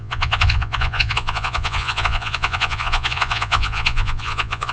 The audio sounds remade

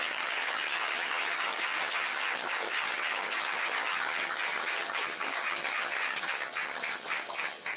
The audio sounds remade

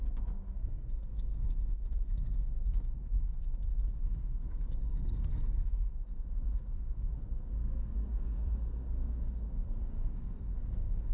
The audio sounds remade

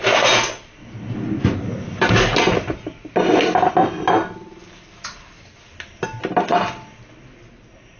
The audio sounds recorded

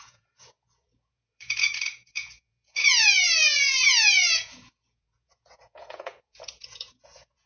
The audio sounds remade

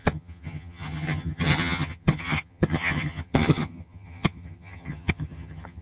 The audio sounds remade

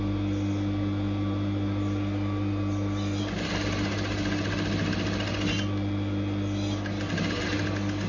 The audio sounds recorded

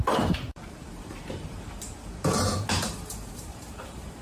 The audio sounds remade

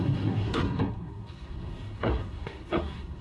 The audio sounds remade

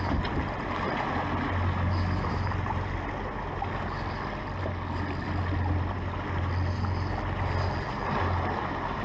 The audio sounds recorded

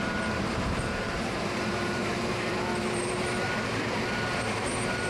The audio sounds remade